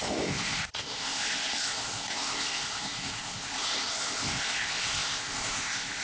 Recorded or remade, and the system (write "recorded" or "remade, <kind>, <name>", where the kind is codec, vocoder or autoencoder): remade, codec, ZipCodec